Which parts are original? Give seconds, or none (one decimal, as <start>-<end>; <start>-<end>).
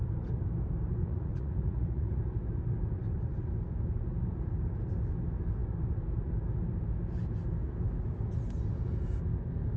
0.0-1.0; 2.2-9.8